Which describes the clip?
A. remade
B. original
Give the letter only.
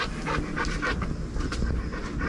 B